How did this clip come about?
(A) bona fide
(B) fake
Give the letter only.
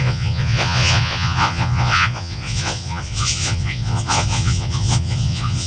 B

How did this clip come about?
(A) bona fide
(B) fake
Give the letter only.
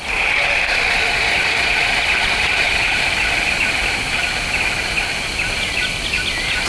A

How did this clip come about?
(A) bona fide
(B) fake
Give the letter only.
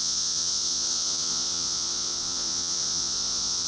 B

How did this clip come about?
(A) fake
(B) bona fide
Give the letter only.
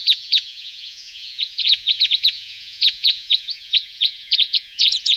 A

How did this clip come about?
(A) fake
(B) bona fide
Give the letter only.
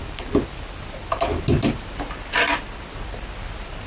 B